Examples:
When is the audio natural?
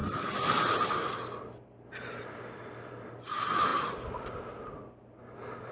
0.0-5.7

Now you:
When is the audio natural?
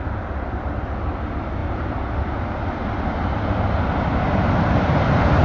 0.0-5.4